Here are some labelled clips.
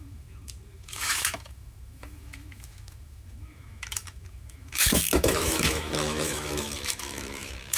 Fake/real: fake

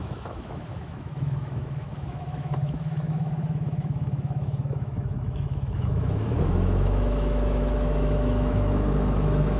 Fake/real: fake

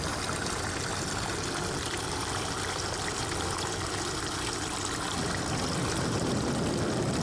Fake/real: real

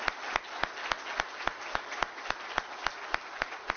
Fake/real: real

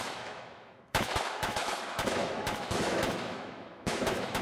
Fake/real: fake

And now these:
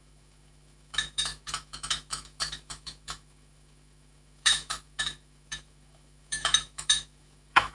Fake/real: fake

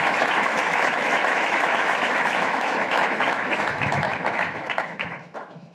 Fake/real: fake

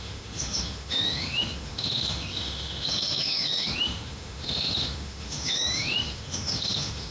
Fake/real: fake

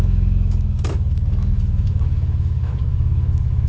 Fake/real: fake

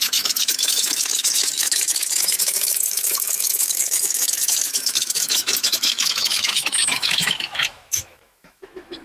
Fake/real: fake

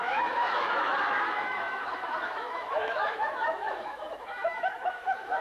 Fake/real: fake